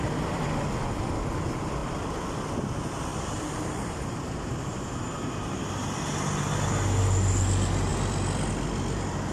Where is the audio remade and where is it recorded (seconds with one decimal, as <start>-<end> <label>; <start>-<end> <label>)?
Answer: 0.0-3.1 recorded; 3.1-4.6 remade; 4.6-9.3 recorded